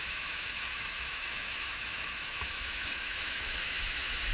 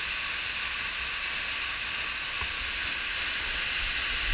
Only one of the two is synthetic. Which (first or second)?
first